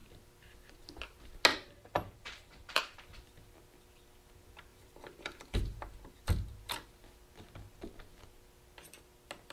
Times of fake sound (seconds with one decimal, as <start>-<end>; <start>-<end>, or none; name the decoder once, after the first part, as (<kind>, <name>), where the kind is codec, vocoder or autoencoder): 1.5-3.0 (vocoder, BigVGAN v2); 4.7-6.2